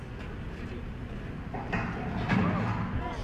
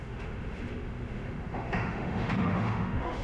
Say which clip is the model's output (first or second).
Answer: second